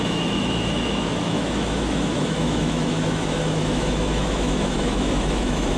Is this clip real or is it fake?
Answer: fake